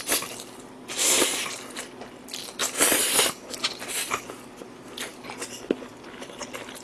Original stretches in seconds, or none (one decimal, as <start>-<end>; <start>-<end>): 0.0-6.8